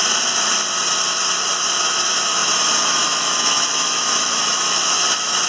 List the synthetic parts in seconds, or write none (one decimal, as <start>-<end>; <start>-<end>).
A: 1.8-5.5